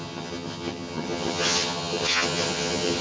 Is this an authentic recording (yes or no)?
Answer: no